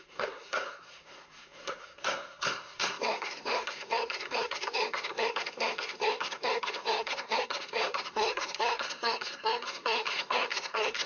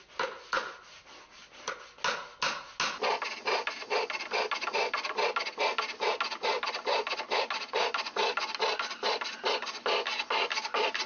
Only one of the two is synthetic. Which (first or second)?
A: first